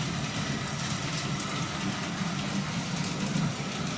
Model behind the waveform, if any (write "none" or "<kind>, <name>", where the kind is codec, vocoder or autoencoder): none